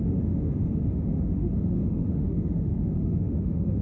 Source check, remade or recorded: remade